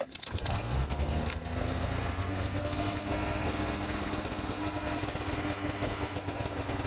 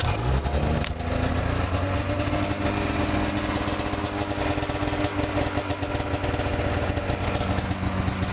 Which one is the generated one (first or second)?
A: first